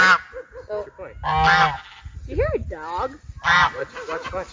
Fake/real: real